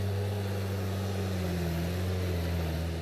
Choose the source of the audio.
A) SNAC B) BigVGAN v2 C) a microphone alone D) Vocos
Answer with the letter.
C